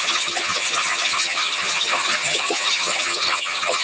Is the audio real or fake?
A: fake